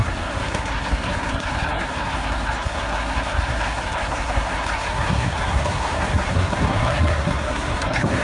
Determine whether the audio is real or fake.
fake